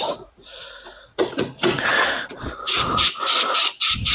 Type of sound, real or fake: fake